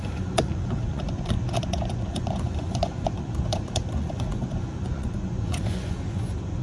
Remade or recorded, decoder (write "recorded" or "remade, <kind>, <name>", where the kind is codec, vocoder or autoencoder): remade, vocoder, Vocos